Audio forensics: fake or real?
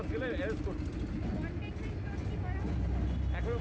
real